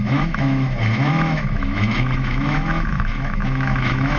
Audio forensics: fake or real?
fake